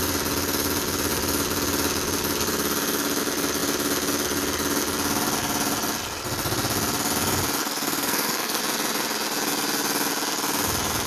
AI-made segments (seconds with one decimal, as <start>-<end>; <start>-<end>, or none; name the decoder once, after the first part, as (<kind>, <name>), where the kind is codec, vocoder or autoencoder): 7.6-8.6 (codec, SNAC)